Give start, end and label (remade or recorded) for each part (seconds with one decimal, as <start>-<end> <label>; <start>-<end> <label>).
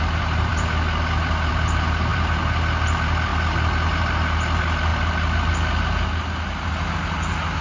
0.0-2.1 recorded; 2.1-2.6 remade; 2.6-7.6 recorded